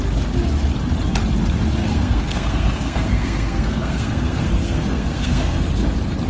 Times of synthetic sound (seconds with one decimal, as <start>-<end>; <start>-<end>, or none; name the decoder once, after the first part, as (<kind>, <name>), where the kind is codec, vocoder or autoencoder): 1.8-5.6 (codec, SNAC)